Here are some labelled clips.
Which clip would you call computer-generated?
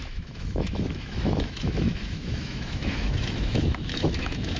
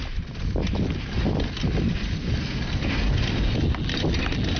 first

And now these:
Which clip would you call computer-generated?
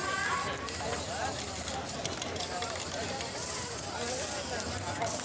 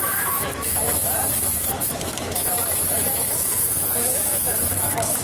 second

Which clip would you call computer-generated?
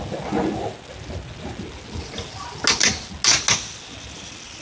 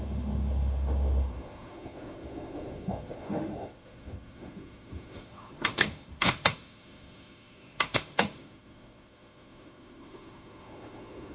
second